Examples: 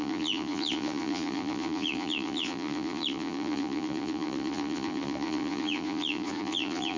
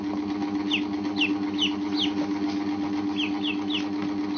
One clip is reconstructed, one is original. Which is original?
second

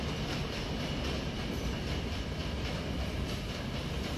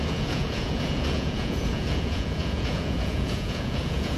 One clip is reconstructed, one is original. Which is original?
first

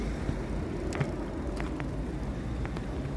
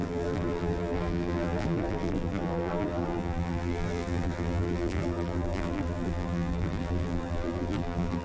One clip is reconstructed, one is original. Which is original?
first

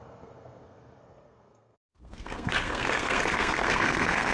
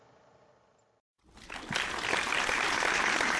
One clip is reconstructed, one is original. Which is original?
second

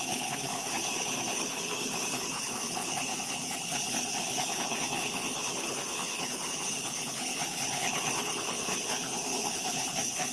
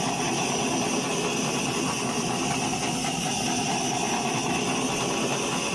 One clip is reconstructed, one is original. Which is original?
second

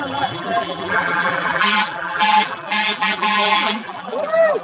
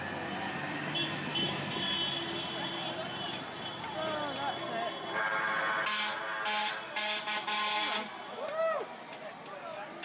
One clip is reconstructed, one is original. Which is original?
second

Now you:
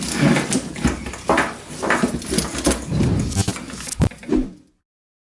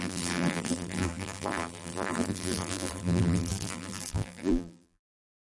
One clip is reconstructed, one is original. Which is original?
first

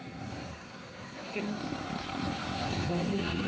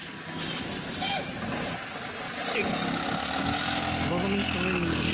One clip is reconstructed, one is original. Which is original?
second